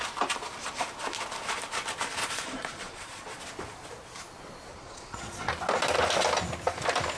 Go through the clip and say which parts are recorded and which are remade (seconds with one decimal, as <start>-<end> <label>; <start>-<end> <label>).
0.0-2.2 recorded; 2.2-3.4 remade; 3.4-4.7 recorded; 4.7-5.5 remade; 5.5-7.2 recorded